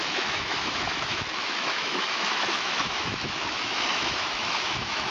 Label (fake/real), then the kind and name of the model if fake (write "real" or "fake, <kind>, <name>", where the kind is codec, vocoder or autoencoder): fake, autoencoder, DAC-VAE